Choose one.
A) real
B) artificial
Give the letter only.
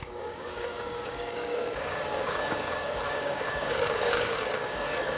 B